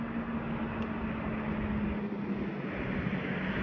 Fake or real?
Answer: real